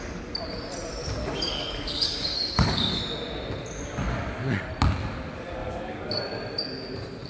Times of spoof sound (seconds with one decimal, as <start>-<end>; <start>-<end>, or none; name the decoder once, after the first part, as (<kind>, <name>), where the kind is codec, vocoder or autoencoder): 1.0-3.0 (codec, DAC); 5.6-6.2